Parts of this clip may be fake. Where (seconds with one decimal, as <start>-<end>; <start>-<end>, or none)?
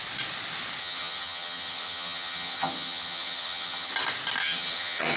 0.8-3.9; 4.4-5.2